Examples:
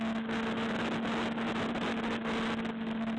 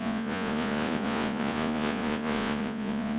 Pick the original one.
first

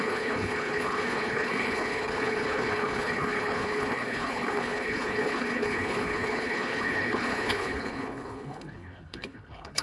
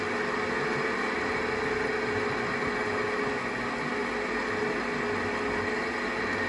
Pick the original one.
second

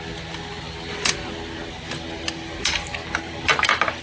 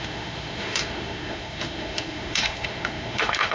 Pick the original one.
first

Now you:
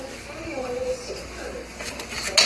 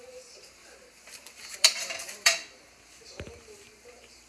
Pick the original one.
first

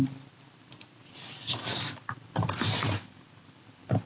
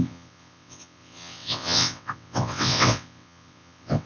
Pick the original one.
first